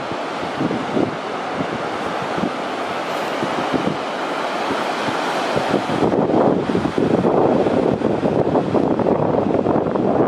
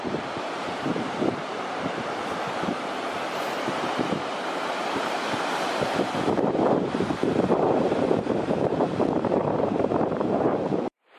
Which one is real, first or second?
first